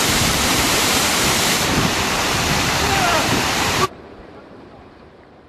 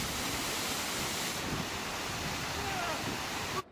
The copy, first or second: first